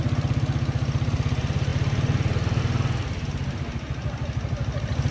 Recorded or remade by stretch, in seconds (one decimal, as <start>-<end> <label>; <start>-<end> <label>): 0.0-5.1 recorded